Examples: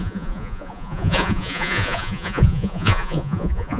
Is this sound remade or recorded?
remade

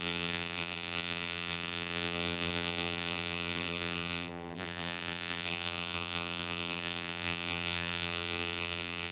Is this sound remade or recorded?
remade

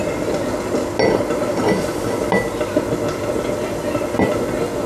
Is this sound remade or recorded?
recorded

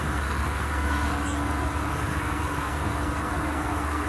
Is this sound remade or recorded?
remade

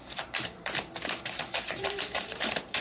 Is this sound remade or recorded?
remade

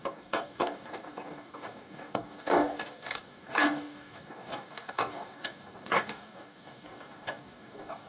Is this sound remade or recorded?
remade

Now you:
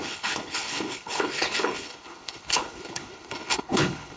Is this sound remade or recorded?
remade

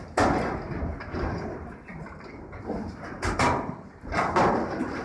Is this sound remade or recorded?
recorded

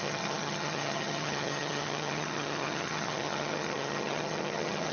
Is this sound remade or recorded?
remade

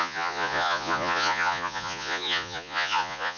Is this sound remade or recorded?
remade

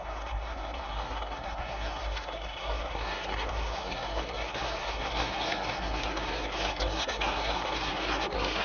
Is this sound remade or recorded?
remade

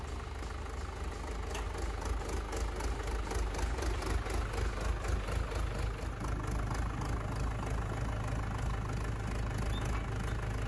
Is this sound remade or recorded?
recorded